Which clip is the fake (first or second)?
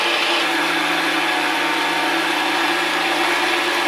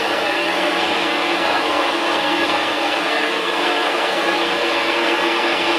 second